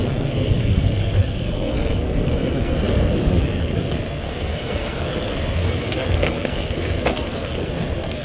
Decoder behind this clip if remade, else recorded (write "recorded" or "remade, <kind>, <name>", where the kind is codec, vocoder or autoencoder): remade, codec, SNAC